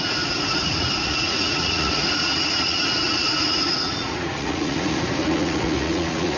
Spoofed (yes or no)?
yes